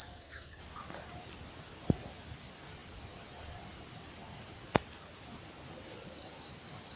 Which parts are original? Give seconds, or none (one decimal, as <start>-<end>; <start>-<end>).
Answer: 0.6-7.0